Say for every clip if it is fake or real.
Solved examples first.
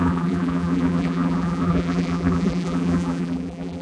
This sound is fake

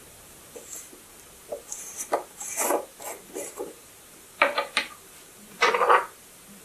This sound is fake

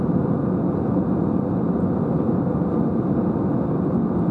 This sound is real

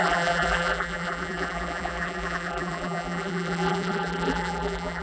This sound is fake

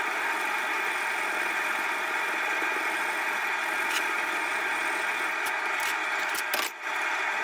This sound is real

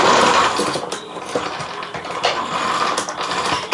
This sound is real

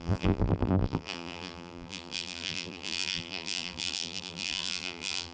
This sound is fake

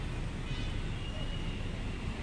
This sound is real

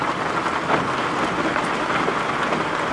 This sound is real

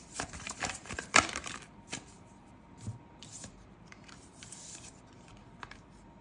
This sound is fake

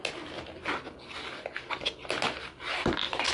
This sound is real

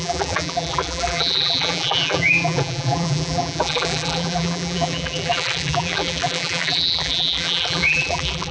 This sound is fake